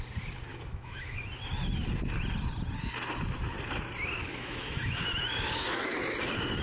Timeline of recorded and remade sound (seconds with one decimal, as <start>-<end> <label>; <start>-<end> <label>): 0.0-0.5 recorded; 0.5-1.4 remade; 1.4-4.2 recorded; 4.2-6.0 remade; 6.0-6.6 recorded